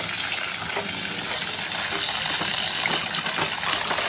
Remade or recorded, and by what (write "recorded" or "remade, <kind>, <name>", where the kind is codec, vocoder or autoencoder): recorded